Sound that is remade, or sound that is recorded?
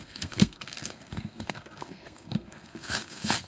remade